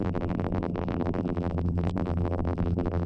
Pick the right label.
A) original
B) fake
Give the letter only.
B